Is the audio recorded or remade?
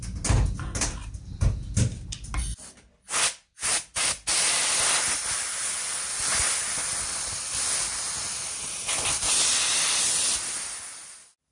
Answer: recorded